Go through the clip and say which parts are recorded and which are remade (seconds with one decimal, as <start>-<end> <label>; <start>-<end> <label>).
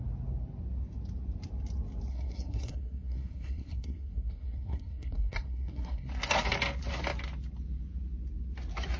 0.0-2.1 recorded; 2.1-6.1 remade; 6.1-9.0 recorded